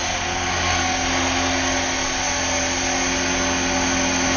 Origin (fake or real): real